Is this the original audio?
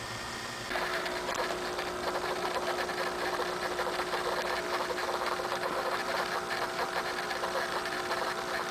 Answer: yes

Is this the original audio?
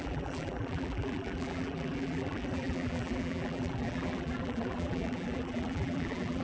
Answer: no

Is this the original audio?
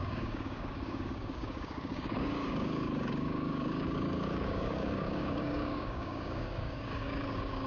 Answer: no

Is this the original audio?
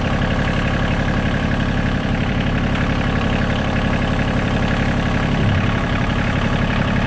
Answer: no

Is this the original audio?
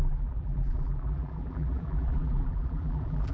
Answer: no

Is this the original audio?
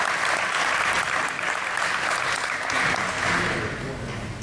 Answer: yes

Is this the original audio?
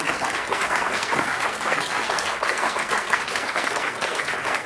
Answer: no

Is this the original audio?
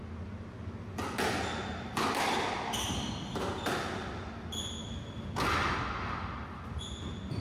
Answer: yes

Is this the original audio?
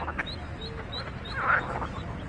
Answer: yes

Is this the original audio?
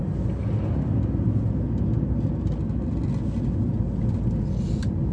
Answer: yes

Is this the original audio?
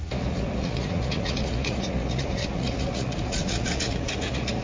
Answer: no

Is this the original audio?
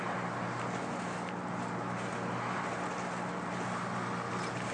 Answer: yes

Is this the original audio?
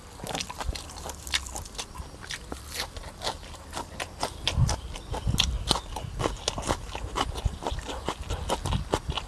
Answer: yes